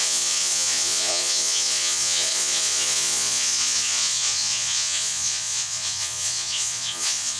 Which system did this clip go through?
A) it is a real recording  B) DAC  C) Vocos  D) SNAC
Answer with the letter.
C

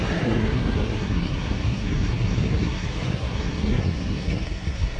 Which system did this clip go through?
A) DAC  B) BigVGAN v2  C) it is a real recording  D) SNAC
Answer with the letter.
D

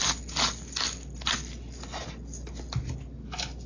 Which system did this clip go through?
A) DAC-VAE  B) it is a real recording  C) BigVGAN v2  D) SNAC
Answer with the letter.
B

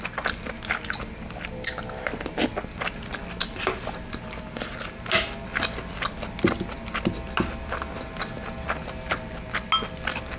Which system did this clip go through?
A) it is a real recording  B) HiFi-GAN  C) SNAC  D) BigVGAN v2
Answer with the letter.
A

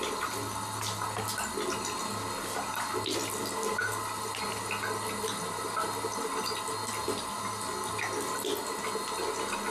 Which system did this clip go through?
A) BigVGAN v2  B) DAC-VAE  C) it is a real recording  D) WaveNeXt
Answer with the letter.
C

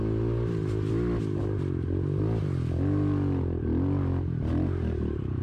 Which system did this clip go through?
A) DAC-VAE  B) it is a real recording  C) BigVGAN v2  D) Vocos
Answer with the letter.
B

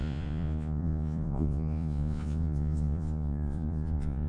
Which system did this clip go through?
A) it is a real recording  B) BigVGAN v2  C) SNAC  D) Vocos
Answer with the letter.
D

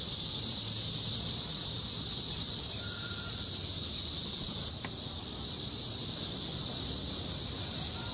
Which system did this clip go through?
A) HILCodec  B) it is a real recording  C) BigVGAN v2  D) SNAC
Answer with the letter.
C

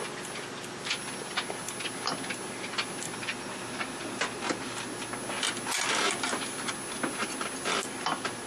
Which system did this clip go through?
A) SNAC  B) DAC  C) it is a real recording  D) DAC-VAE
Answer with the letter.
C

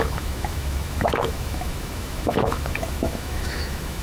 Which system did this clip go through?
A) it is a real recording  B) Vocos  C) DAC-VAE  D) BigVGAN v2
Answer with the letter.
C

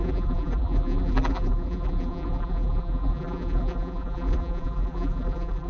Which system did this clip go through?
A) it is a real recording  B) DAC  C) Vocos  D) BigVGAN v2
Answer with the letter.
D